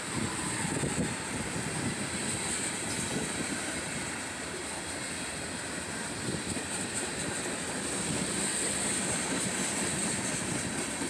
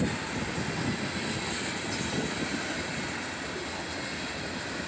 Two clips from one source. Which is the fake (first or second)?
first